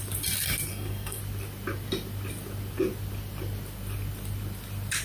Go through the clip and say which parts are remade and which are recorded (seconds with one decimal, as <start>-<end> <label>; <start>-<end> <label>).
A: 0.0-0.7 recorded; 0.7-1.2 remade; 1.2-5.0 recorded